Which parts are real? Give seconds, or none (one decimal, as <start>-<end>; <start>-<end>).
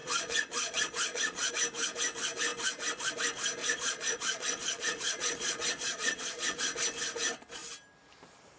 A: 1.5-3.6; 6.6-8.6